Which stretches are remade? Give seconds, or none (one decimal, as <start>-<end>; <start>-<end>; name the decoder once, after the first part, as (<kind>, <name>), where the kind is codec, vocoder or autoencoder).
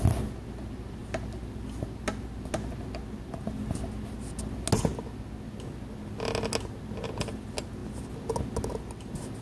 none